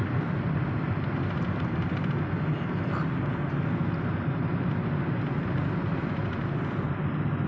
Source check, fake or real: real